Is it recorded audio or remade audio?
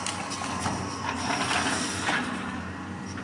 recorded